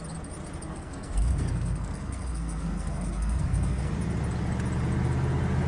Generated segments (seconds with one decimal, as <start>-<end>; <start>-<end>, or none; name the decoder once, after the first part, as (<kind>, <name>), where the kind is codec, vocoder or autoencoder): 0.7-3.9 (codec, SNAC)